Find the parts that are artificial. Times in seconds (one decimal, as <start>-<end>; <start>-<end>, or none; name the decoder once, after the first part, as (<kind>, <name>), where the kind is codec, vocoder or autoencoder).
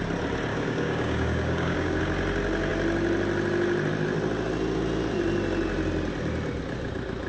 0.5-2.0 (codec, DAC)